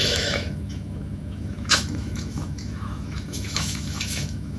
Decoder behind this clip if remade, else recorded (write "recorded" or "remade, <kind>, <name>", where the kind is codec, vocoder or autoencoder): remade, autoencoder, DAC-VAE